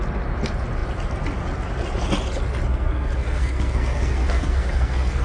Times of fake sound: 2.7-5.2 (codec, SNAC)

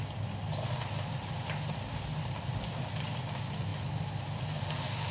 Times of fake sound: none

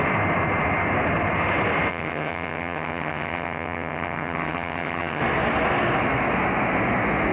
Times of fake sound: 1.9-5.2 (vocoder, HiFi-GAN)